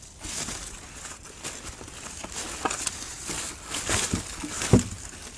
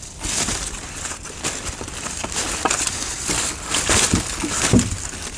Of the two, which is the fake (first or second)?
second